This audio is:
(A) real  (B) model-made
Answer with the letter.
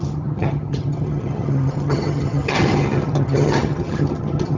B